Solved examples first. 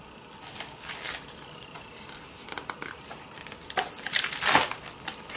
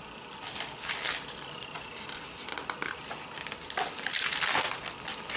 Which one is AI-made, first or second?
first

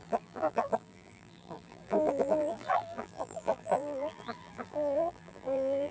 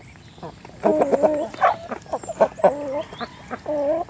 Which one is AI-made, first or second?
first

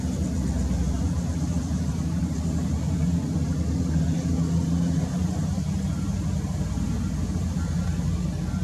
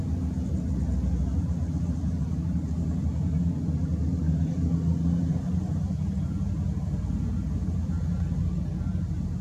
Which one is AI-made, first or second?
first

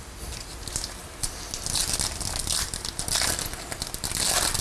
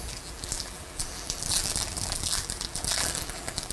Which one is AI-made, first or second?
second